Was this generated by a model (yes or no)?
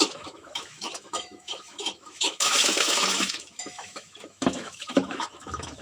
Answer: yes